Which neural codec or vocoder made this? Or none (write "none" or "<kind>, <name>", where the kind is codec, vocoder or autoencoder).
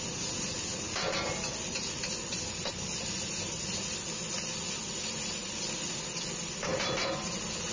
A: none